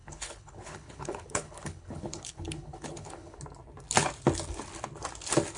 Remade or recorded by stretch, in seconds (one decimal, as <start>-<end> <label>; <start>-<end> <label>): 0.0-3.4 remade; 3.4-5.6 recorded